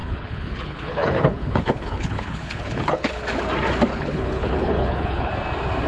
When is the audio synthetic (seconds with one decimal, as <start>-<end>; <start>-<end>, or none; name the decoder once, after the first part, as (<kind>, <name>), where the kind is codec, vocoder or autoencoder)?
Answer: 0.0-3.2 (codec, HILCodec); 3.9-5.3